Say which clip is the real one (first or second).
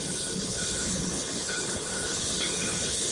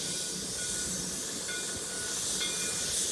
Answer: second